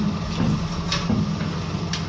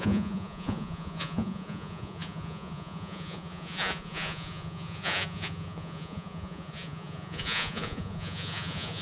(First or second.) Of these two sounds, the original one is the first